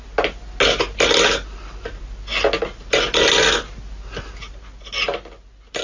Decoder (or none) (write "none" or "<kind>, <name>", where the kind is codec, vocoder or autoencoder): none